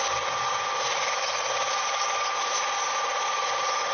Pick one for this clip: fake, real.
real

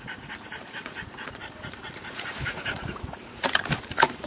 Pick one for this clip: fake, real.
fake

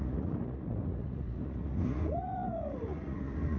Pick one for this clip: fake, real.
fake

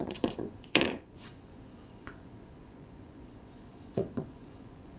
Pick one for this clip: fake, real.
fake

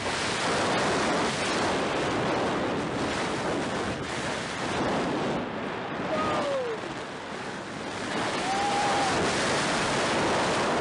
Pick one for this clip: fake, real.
real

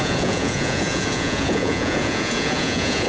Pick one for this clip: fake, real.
fake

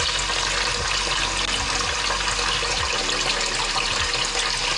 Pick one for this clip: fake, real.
real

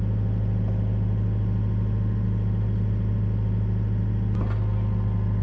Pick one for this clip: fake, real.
real